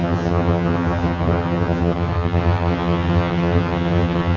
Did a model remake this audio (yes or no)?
yes